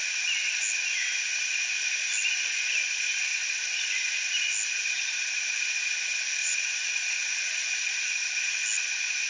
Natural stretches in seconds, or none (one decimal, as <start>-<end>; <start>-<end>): 0.0-3.3; 3.9-6.4; 8.3-9.3